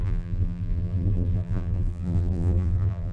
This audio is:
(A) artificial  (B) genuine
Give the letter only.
A